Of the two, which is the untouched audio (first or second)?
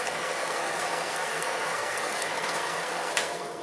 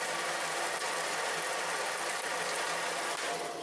second